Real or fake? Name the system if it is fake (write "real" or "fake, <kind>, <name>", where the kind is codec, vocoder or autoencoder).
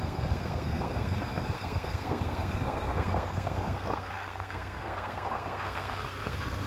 fake, codec, SNAC